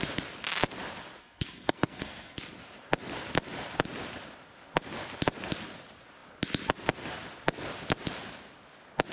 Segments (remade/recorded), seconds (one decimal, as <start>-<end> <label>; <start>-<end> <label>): 0.0-1.2 recorded; 1.2-2.4 remade; 2.4-9.1 recorded